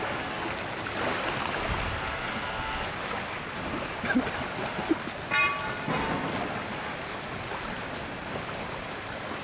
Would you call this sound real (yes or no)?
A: yes